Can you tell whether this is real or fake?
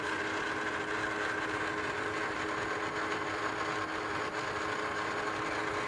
real